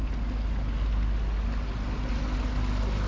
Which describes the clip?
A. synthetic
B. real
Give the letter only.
B